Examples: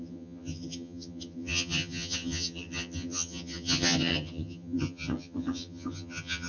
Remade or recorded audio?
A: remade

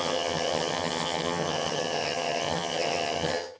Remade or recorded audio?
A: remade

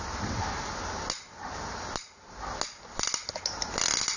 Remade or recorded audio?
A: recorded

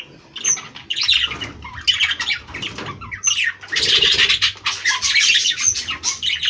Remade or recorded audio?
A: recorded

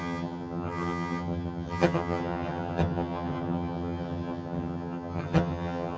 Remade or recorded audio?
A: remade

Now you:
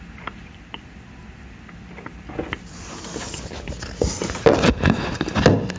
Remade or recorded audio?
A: recorded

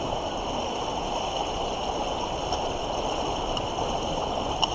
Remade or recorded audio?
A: recorded